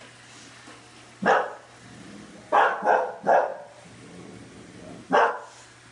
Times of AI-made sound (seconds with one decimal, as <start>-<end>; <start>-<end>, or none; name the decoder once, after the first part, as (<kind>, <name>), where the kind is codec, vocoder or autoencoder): none